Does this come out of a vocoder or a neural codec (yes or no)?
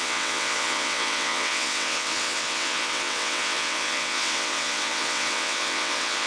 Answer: yes